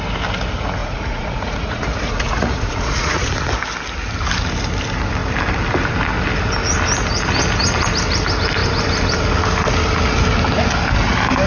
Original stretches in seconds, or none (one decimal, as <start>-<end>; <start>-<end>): 0.0-0.8; 3.3-11.5